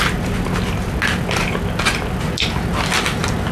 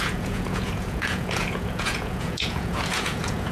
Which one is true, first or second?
first